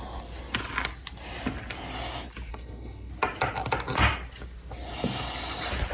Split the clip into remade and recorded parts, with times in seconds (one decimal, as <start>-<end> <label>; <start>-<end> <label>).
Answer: 0.0-2.5 recorded; 2.5-3.1 remade; 3.1-5.9 recorded